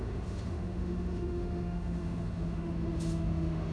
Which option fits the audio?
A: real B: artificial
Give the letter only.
B